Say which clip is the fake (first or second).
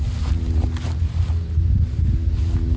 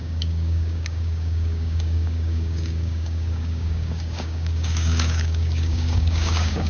second